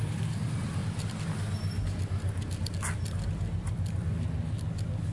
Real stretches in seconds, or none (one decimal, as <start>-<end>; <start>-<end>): 0.0-5.1